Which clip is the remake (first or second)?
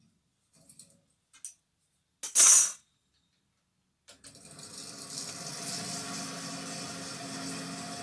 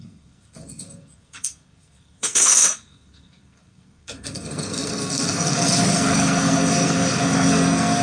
second